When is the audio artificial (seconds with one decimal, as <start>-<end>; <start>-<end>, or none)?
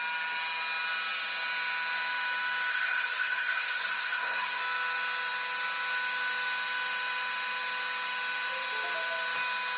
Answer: 2.7-4.6